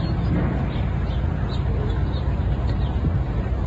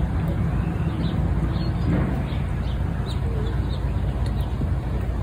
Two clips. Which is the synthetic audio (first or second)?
first